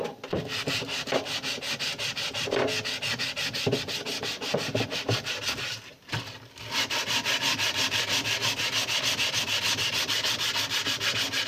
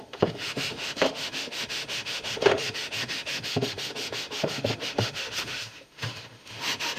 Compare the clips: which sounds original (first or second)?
first